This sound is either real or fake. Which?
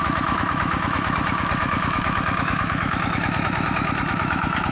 fake